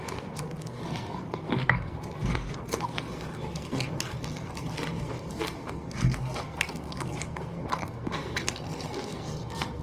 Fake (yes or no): yes